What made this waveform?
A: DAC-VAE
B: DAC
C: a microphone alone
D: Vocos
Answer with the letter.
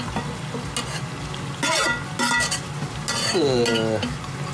C